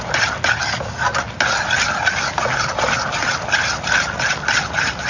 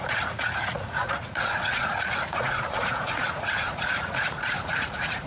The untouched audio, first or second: first